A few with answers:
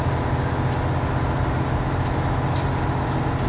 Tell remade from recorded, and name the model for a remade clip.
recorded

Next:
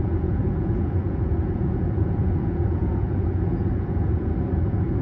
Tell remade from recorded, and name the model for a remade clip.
remade, vocoder, Vocos